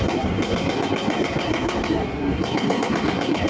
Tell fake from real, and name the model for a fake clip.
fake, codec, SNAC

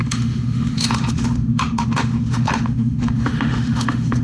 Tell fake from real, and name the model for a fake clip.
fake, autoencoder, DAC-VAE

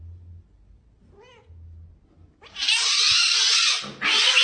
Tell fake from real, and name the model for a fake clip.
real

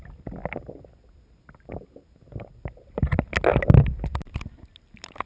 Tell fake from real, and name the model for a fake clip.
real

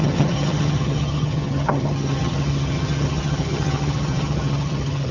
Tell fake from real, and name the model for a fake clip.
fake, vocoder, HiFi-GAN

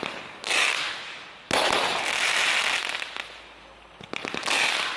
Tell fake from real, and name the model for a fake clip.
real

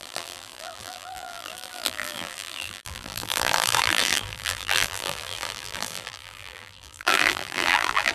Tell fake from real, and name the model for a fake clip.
fake, vocoder, BigVGAN v2